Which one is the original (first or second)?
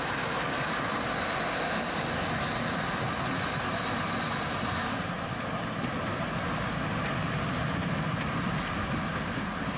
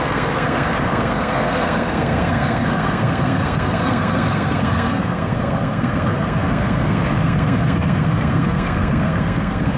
first